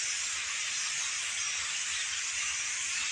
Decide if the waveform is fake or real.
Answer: real